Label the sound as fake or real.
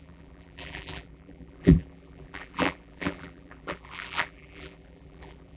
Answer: fake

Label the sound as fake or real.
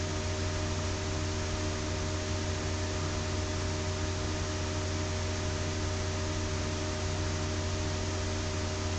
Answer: real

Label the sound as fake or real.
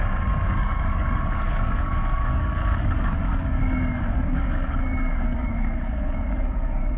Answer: fake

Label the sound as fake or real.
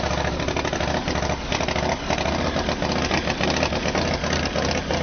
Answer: real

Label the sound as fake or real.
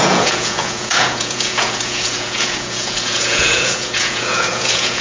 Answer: fake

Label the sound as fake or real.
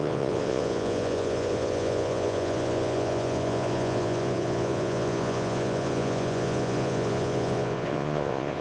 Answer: fake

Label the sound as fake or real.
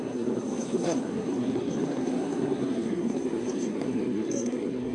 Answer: fake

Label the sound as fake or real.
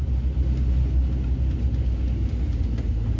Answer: real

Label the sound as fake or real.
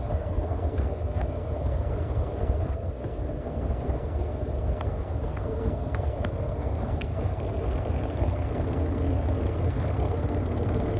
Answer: fake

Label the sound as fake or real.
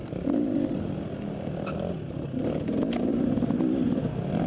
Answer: real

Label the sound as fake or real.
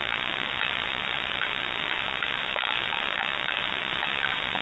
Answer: fake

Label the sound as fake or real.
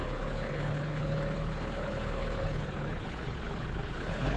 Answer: fake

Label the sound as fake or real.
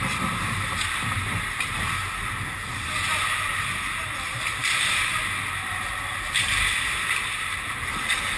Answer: real